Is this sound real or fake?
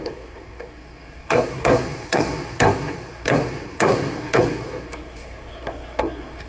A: fake